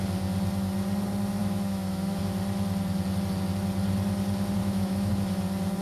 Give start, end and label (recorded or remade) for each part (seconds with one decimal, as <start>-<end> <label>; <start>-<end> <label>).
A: 0.0-1.4 recorded; 1.4-2.2 remade; 2.2-4.6 recorded; 4.6-5.1 remade; 5.1-5.8 recorded